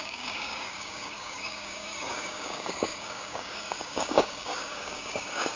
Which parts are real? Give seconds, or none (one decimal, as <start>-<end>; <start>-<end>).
none